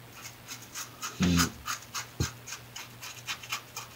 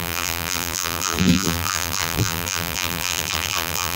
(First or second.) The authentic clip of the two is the first